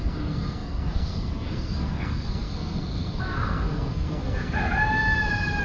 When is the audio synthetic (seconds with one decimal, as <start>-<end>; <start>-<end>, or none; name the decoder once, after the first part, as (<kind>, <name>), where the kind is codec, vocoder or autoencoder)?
0.0-4.6 (codec, SNAC)